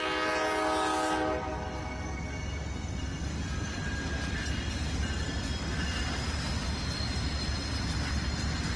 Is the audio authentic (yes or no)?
yes